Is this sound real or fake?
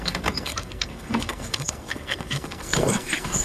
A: fake